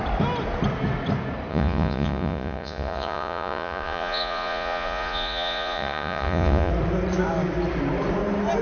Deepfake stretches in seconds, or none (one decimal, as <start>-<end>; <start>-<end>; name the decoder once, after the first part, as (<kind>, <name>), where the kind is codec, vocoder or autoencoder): 1.5-6.7 (vocoder, Vocos)